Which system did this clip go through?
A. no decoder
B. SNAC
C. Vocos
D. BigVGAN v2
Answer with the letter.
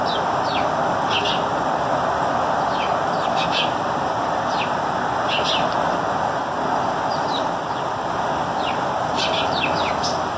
A